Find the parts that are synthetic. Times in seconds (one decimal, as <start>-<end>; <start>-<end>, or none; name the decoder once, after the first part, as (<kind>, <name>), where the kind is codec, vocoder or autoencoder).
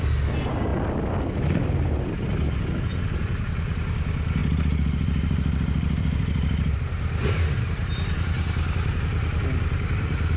4.4-9.0 (vocoder, BigVGAN v2)